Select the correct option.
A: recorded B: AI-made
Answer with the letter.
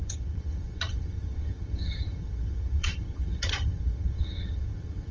B